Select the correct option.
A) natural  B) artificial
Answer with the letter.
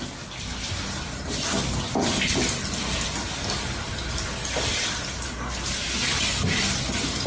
A